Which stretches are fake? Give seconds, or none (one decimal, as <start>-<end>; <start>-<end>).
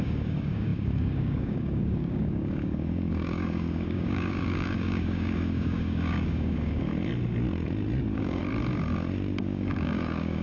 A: 0.0-6.9; 8.0-8.4; 9.4-10.4